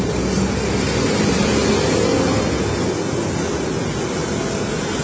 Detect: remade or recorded recorded